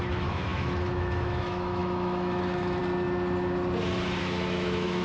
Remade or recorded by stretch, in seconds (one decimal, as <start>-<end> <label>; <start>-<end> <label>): 0.0-2.8 remade; 2.8-4.2 recorded; 4.2-5.0 remade